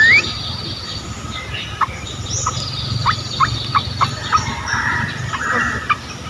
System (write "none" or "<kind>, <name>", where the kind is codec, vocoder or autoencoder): none